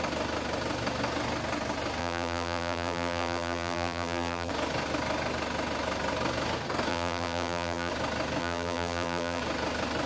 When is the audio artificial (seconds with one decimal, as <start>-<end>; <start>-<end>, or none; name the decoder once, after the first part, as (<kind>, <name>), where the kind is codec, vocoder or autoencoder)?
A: 2.0-4.5 (vocoder, BigVGAN v2); 6.9-7.9; 8.4-9.4